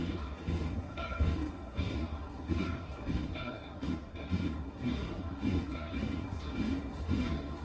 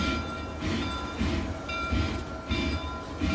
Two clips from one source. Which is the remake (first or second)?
first